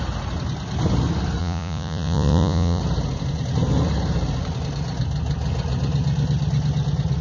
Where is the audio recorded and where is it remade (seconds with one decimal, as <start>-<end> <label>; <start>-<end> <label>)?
0.0-1.4 recorded; 1.4-2.8 remade; 2.8-7.2 recorded